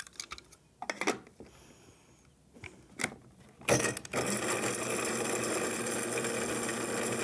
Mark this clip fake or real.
real